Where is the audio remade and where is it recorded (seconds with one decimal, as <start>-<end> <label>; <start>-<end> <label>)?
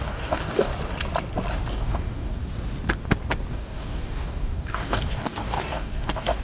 0.0-0.7 remade; 0.7-1.7 recorded; 1.7-2.4 remade; 2.4-3.5 recorded; 3.5-6.4 remade